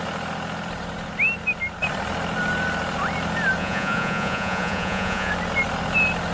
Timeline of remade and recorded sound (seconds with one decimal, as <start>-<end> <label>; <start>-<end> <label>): 0.0-3.6 recorded; 3.6-5.3 remade; 5.3-6.3 recorded